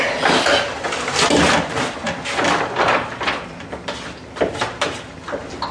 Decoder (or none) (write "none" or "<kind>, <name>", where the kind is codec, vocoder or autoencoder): none